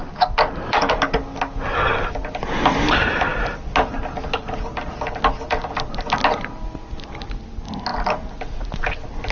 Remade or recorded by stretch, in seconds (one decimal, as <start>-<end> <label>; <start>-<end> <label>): 0.0-9.3 recorded